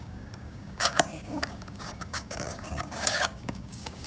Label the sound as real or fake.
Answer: fake